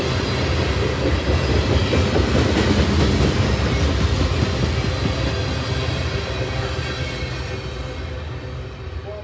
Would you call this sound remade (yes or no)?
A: no